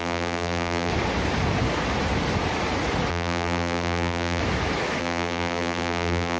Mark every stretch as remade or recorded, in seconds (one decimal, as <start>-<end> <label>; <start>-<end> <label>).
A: 0.0-0.9 remade; 0.9-3.1 recorded; 3.1-4.4 remade; 4.4-5.0 recorded; 5.0-6.4 remade